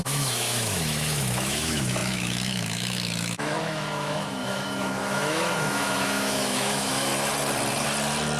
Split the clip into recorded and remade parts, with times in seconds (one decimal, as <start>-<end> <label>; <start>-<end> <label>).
0.0-7.1 remade; 7.1-8.4 recorded